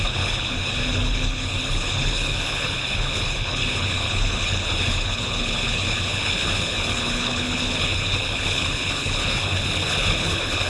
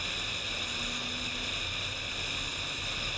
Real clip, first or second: second